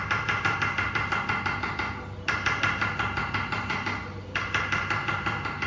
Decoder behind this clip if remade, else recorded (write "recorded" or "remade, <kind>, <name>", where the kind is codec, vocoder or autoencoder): recorded